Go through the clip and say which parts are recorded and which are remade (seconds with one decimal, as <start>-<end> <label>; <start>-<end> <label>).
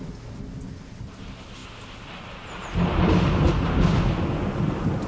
0.0-5.1 recorded